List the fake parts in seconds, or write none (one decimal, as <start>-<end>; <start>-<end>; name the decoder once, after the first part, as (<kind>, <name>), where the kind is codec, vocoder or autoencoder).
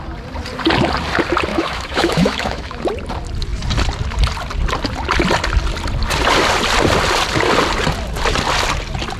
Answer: 1.5-2.8 (autoencoder, DAC-VAE)